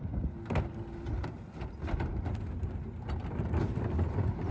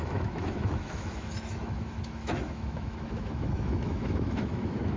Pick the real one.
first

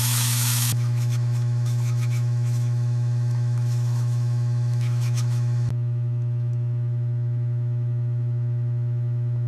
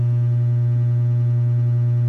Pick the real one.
second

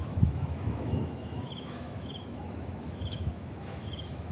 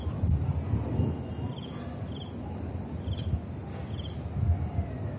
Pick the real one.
second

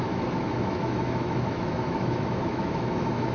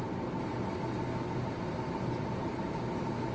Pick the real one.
second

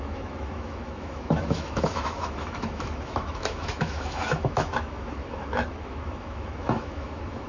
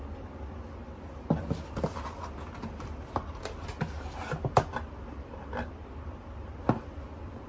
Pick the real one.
second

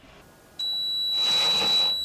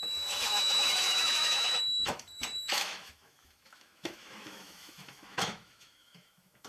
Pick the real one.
first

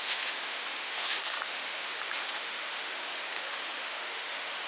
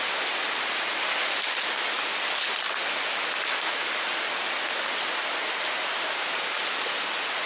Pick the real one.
second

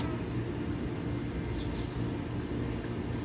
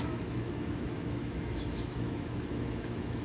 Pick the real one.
first